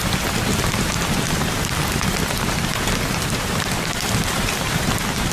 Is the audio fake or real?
fake